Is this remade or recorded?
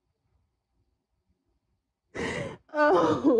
recorded